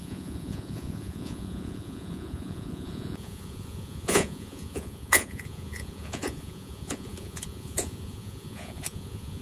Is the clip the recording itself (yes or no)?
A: no